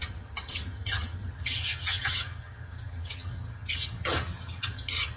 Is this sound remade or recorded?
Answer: remade